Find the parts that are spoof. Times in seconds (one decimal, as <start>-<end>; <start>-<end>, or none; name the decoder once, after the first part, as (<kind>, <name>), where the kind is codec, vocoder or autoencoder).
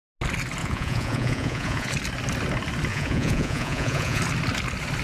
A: 0.6-1.9 (vocoder, Vocos); 2.9-4.2